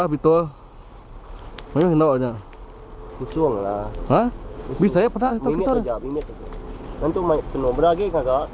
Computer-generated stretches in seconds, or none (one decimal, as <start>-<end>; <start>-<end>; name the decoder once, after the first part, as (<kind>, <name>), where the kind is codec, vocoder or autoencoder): 3.6-5.3 (codec, DAC)